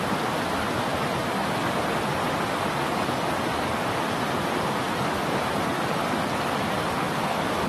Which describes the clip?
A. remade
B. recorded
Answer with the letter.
A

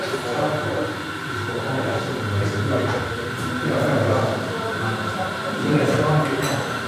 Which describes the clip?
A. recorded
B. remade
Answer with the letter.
B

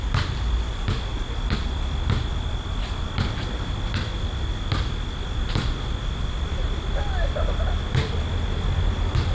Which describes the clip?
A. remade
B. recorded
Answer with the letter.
B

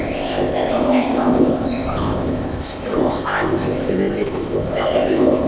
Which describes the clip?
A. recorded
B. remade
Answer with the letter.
B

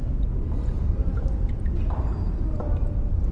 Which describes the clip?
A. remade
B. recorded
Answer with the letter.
B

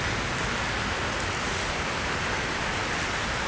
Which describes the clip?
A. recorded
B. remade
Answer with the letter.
A